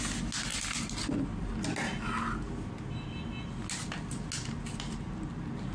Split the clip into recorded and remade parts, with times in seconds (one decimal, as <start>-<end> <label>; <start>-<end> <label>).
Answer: 0.0-5.7 recorded